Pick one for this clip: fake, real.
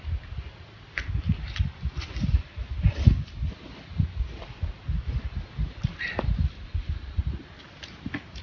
real